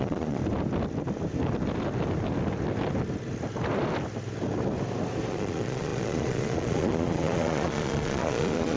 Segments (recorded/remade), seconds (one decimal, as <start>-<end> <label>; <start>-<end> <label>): 0.0-0.4 remade; 0.4-5.3 recorded; 5.3-8.8 remade